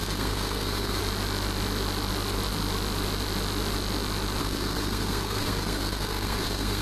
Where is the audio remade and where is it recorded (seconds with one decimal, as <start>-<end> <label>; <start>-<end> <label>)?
0.0-1.0 remade; 1.0-4.4 recorded; 4.4-6.8 remade